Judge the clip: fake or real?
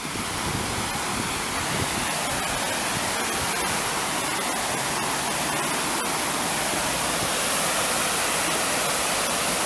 real